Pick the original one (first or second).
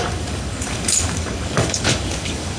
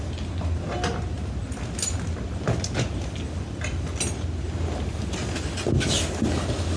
second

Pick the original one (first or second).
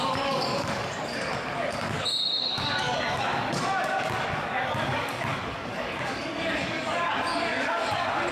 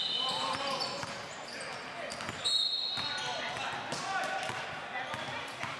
second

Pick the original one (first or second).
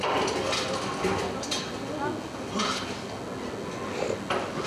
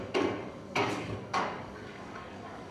first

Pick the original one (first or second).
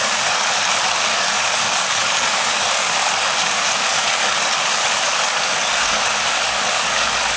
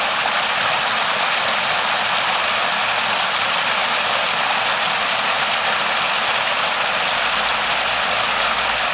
second